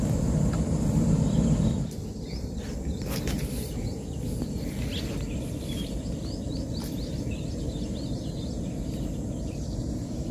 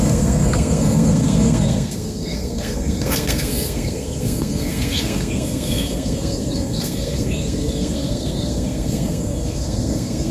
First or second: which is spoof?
second